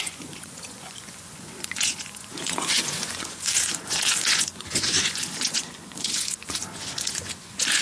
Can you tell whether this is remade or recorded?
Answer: remade